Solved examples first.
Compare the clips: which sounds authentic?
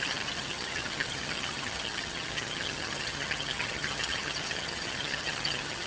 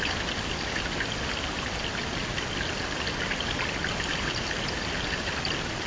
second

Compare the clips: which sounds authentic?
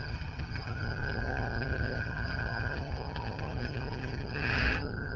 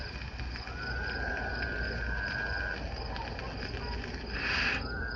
second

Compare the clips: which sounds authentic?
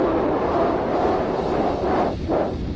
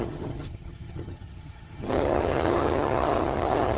first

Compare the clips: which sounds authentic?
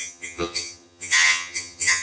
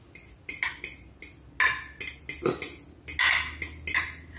second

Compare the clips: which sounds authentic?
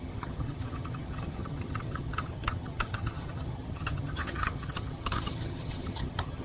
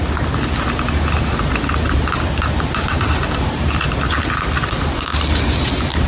second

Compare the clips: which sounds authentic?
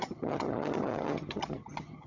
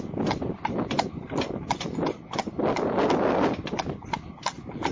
second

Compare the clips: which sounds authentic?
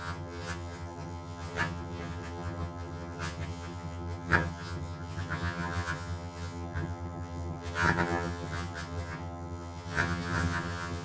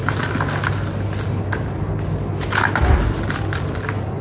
second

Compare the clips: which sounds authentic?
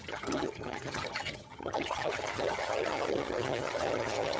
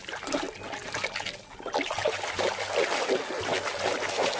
second